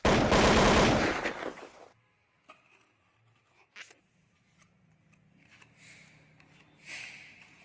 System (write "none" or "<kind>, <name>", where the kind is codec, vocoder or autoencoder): none